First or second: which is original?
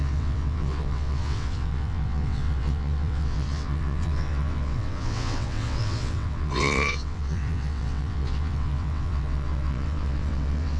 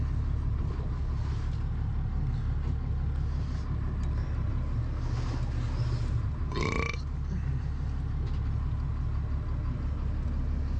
second